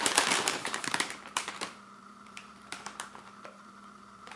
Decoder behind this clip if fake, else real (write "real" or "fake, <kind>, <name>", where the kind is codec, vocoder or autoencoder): fake, vocoder, BigVGAN v2